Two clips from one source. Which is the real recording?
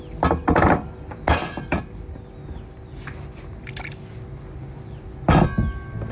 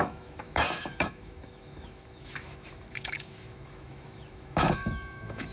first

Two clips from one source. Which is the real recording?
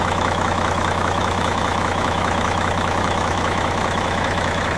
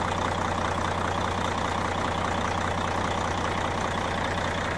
second